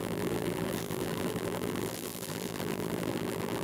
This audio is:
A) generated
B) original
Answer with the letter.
A